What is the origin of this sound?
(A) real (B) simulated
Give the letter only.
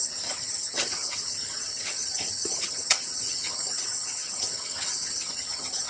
B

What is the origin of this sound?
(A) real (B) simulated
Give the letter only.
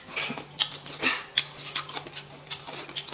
A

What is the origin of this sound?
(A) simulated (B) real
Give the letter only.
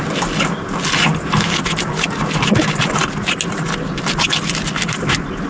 B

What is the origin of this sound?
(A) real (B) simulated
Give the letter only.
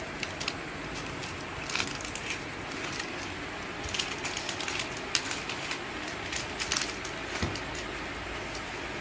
A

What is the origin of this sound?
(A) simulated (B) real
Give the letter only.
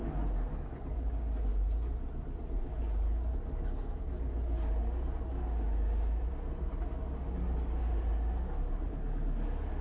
B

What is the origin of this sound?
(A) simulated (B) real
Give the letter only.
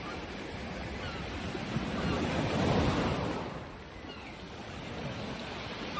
B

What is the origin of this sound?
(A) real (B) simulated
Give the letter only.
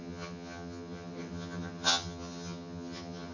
B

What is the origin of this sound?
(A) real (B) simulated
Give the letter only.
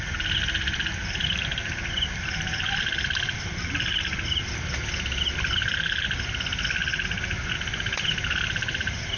A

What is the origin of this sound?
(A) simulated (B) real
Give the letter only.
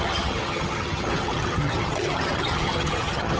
A